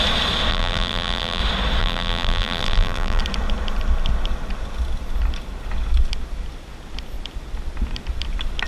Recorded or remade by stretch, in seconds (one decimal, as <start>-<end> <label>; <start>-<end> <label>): 0.0-0.5 recorded; 0.5-1.4 remade; 1.4-1.8 recorded; 1.8-3.2 remade; 3.2-8.7 recorded